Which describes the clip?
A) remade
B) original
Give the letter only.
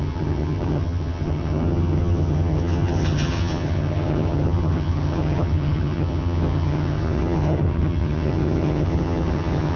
A